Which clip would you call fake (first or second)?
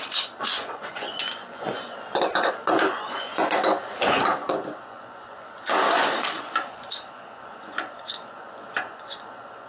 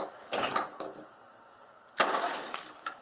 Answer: first